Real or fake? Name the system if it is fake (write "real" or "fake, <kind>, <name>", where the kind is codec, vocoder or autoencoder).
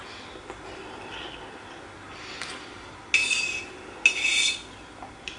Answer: real